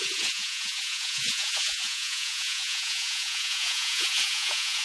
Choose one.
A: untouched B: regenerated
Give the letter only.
B